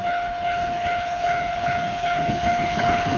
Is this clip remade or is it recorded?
remade